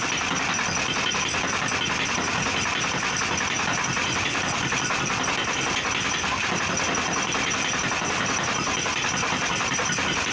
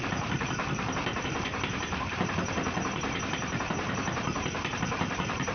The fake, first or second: second